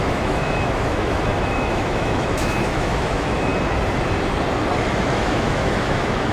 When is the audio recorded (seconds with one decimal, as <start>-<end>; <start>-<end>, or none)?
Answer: 3.5-5.0